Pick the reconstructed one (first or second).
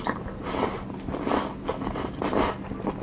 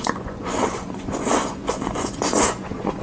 second